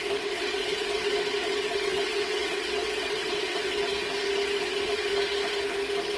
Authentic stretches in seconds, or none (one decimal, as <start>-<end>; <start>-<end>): 3.9-4.6; 5.1-6.2